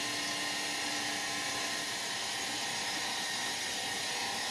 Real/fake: real